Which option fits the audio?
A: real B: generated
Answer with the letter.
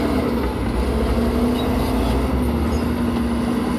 A